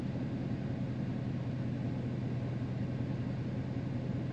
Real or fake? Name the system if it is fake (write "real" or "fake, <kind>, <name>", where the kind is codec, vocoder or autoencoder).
real